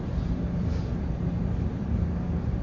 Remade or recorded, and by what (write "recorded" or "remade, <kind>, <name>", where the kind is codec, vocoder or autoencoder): recorded